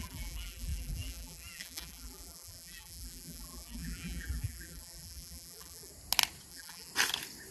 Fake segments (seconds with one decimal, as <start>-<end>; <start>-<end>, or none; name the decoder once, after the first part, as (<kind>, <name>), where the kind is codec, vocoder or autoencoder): 0.0-5.9 (vocoder, BigVGAN v2); 6.5-6.9